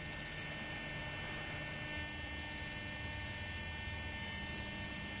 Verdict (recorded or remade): recorded